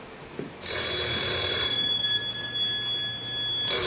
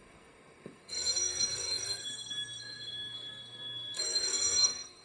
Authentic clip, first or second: first